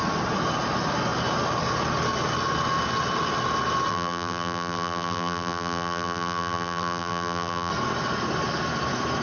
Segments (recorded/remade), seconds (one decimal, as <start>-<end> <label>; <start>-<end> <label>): 0.0-3.9 recorded; 3.9-7.7 remade; 7.7-9.2 recorded